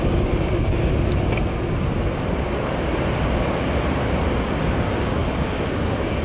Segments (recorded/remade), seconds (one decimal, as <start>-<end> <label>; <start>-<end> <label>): 0.0-0.9 remade; 0.9-4.6 recorded; 4.6-6.2 remade